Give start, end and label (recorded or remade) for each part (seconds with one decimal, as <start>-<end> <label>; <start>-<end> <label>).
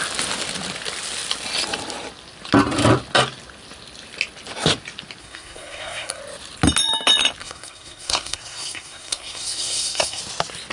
0.0-5.2 recorded; 5.2-6.2 remade; 6.2-7.4 recorded; 7.4-10.2 remade; 10.2-10.7 recorded